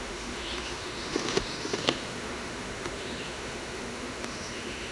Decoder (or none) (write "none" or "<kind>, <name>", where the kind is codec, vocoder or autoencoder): autoencoder, DAC-VAE